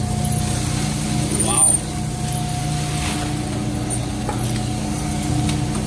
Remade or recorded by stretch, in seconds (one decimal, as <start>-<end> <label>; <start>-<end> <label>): 0.0-5.9 recorded